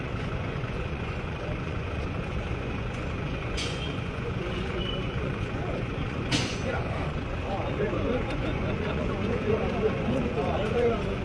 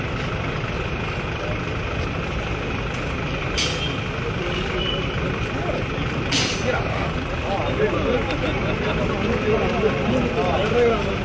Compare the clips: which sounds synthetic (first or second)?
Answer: first